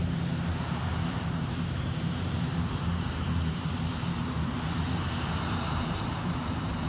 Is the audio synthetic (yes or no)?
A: yes